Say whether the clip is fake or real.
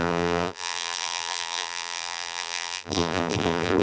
fake